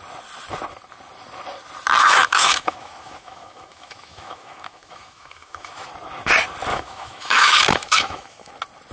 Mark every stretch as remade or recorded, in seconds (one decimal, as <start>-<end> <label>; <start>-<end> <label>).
0.0-2.0 recorded; 2.0-5.9 remade; 5.9-6.7 recorded; 6.7-8.5 remade; 8.5-8.9 recorded